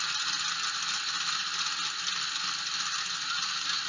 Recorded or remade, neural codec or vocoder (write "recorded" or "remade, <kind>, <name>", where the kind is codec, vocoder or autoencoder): recorded